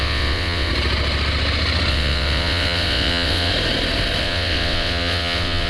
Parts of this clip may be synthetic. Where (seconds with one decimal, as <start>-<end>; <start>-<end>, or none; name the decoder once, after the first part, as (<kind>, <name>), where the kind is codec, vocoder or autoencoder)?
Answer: 0.0-0.7 (vocoder, WaveNeXt); 1.9-3.5; 4.2-5.7